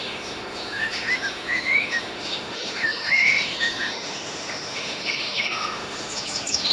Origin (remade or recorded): remade